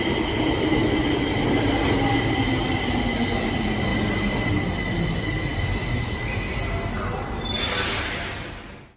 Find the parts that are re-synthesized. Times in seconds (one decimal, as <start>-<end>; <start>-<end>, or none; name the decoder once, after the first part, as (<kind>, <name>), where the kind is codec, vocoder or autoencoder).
none